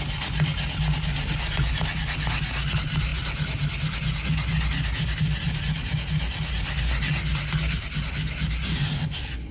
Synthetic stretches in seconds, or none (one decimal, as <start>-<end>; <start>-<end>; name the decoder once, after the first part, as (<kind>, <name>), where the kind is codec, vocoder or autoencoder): none